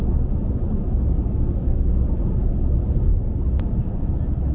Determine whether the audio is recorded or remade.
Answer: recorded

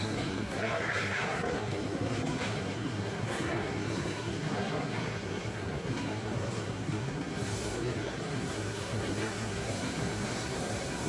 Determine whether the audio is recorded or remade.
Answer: remade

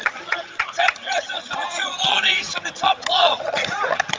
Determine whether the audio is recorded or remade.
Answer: remade